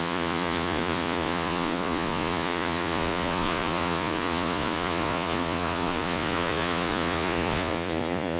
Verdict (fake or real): fake